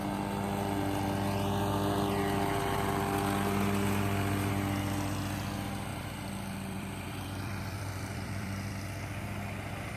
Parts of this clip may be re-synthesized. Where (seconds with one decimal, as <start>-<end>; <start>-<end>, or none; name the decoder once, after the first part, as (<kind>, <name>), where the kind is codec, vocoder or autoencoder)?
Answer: 5.9-8.7 (vocoder, BigVGAN v2)